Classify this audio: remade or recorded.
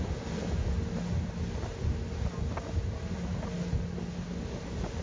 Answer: recorded